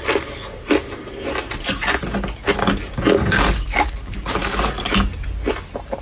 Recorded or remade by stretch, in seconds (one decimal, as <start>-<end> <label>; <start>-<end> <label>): 0.0-6.0 recorded